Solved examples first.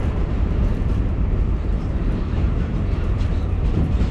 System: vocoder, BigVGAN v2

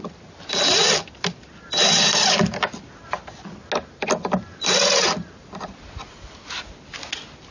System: none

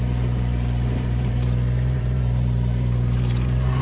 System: vocoder, BigVGAN v2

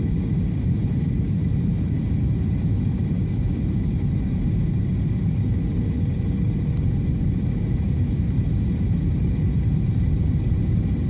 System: vocoder, BigVGAN v2